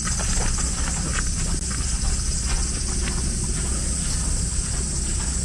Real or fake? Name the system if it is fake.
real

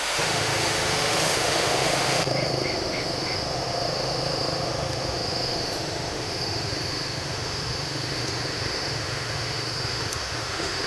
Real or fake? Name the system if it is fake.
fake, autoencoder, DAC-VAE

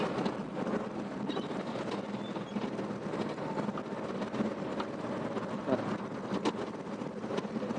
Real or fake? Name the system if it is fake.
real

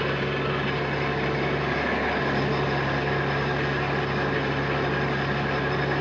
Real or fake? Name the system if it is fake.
real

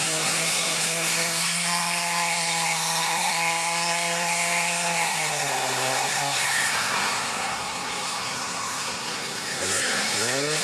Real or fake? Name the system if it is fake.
fake, codec, SNAC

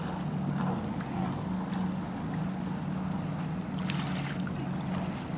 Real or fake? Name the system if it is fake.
real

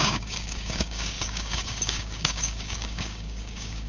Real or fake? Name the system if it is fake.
fake, codec, DAC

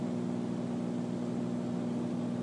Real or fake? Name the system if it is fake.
real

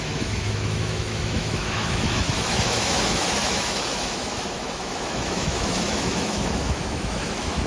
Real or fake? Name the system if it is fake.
fake, autoencoder, DAC-VAE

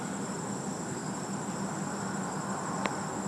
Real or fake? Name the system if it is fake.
real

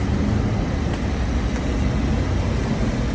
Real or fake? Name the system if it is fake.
real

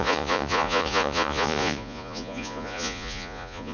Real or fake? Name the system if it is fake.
fake, vocoder, Vocos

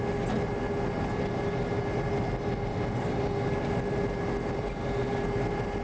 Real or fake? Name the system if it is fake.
real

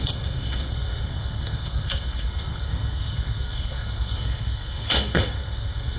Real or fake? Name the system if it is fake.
fake, codec, SNAC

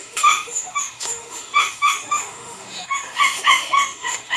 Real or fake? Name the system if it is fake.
fake, autoencoder, DAC-VAE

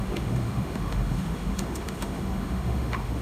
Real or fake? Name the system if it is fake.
fake, autoencoder, DAC-VAE